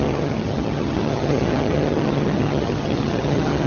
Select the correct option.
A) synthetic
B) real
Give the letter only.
A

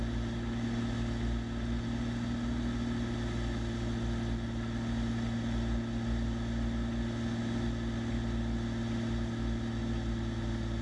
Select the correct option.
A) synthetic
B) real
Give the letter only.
B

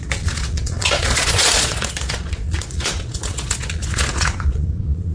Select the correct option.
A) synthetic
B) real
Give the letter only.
A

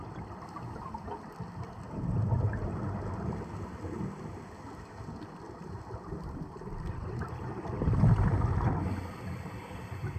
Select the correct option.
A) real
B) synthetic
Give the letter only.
A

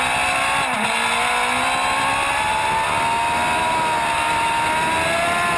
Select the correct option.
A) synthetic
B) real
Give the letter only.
B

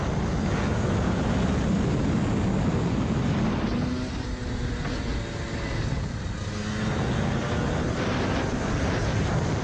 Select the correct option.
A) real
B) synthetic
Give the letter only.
A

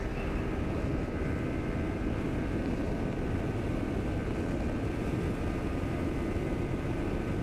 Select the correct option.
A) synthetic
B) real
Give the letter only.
B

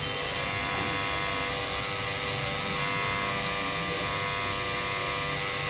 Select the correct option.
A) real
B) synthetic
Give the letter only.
A